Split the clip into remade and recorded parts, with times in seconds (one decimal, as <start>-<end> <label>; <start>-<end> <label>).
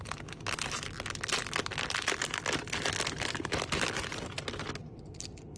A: 0.0-5.6 recorded